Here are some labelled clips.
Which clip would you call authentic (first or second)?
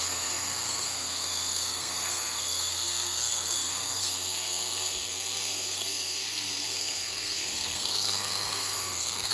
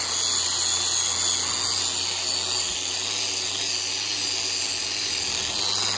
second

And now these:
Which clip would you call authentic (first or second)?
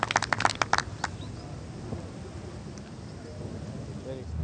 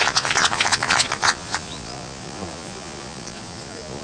first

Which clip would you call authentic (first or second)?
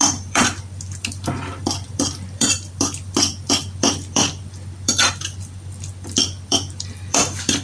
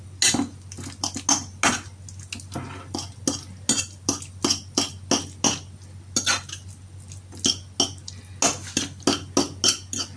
second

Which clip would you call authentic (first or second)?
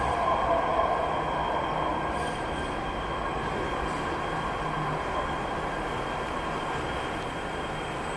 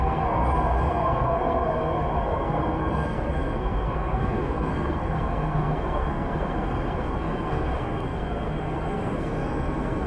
first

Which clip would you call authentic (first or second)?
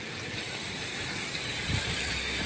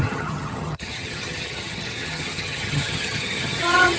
first